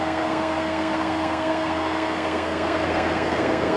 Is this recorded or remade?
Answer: remade